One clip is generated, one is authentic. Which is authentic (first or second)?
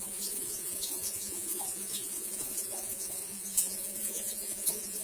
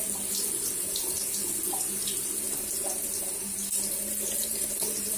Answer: second